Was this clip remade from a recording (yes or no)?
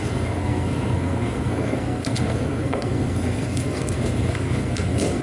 yes